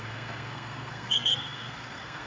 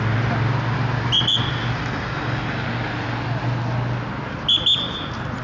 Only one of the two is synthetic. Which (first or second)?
first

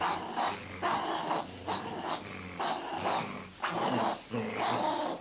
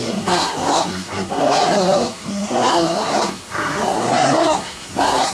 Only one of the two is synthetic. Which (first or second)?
second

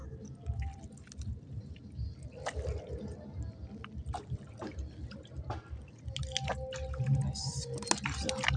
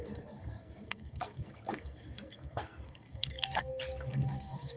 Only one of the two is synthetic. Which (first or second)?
second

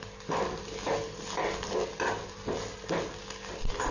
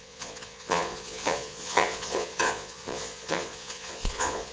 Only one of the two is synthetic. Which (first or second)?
second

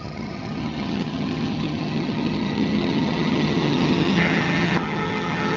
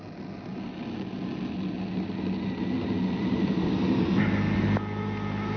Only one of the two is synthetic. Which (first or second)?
first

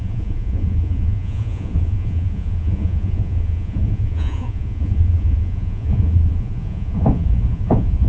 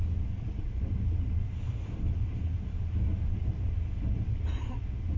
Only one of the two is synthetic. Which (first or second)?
first